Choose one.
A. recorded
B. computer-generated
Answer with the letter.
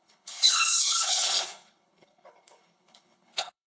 B